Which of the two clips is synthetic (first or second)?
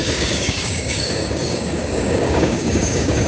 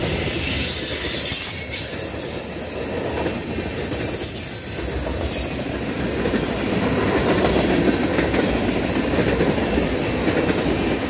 first